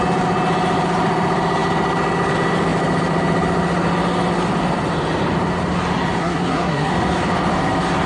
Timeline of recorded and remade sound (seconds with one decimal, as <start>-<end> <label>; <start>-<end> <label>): 0.0-6.2 recorded; 6.2-6.9 remade; 6.9-8.1 recorded